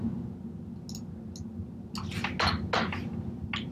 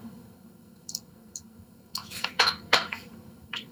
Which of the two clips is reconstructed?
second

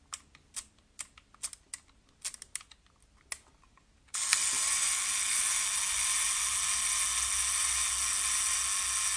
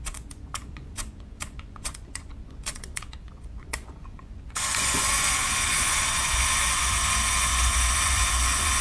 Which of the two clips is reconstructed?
second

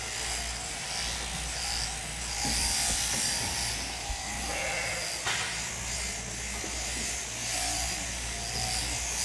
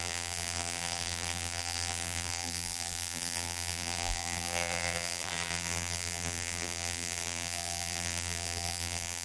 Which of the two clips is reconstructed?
second